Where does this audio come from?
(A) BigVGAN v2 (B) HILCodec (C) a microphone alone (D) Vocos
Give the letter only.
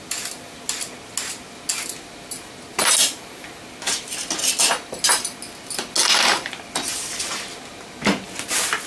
C